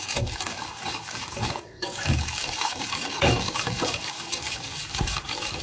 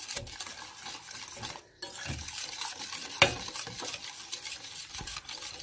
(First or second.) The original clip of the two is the second